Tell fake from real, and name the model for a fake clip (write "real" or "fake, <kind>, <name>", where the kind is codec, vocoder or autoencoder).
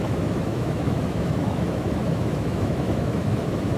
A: fake, autoencoder, DAC-VAE